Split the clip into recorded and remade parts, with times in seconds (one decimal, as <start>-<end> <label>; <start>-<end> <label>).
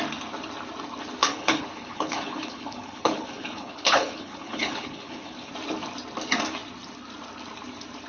0.0-1.2 recorded; 1.2-5.5 remade; 5.5-8.1 recorded